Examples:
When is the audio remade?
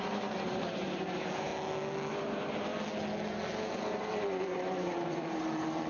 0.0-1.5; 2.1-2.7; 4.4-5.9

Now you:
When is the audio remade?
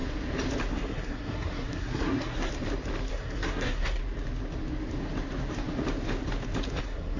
0.7-2.5; 3.1-4.0; 6.8-7.2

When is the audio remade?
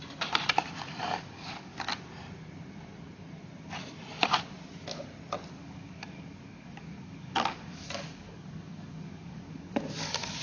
1.0-2.0; 5.6-10.4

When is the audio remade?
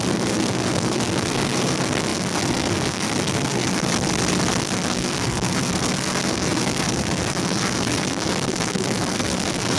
0.0-3.9; 4.6-9.8